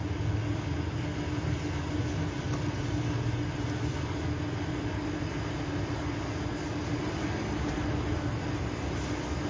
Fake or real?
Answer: real